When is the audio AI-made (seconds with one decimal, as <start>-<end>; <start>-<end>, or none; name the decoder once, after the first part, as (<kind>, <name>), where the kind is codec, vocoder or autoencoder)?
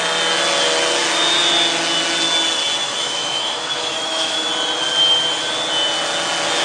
2.8-4.5 (autoencoder, DAC-VAE)